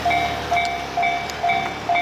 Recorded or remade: recorded